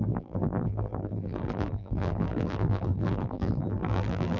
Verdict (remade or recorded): remade